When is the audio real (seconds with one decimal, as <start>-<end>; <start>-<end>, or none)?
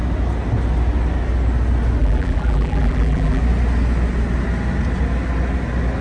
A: 0.0-2.0; 3.4-6.0